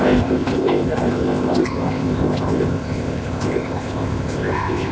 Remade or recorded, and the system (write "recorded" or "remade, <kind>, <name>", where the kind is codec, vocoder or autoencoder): remade, codec, ZipCodec